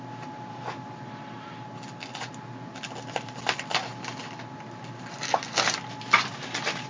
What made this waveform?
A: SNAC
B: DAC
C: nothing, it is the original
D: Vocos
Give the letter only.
C